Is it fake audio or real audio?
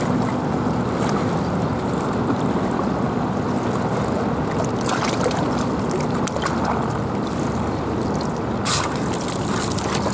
real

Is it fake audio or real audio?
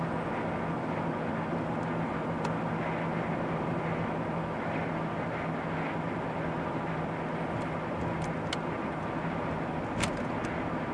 real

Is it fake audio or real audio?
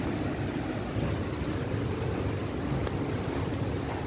real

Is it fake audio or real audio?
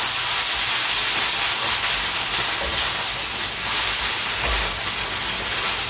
real